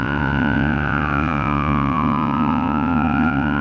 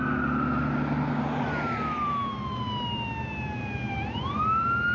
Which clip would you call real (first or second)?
second